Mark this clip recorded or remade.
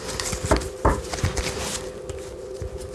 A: remade